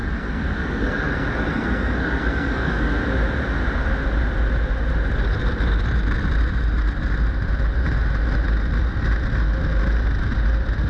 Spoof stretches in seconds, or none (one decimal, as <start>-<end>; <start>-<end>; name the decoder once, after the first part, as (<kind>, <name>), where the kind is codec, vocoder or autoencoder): 0.0-3.0 (codec, SNAC)